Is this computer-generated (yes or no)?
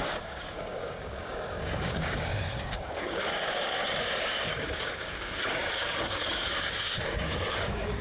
yes